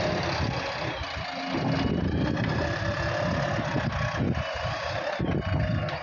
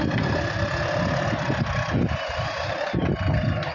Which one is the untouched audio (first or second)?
first